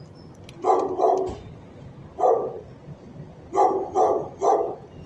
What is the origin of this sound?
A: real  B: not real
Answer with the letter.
A